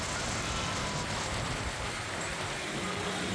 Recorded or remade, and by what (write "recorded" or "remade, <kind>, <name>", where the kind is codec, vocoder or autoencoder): recorded